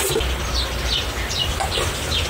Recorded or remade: recorded